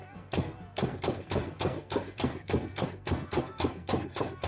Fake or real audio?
fake